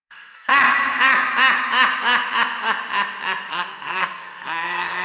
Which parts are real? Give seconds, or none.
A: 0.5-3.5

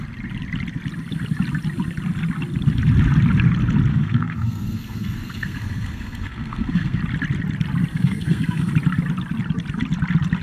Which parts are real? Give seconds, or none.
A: 0.0-3.9; 7.0-7.9; 8.7-10.4

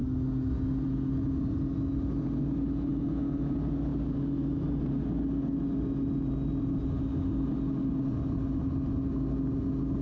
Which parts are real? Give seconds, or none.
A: 0.0-10.0

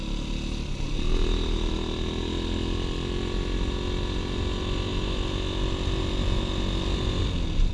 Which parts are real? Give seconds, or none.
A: 0.0-7.7

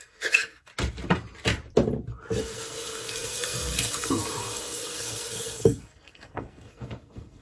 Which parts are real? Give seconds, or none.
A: 0.7-2.4

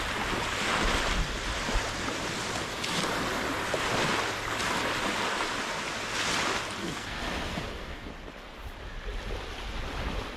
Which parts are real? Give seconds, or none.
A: 0.0-6.8; 8.1-10.4

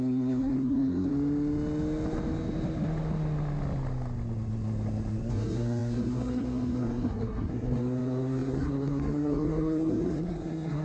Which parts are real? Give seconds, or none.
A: 1.1-5.3